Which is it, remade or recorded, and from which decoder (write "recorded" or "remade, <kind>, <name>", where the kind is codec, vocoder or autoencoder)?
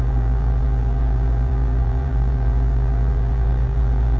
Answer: remade, vocoder, BigVGAN v2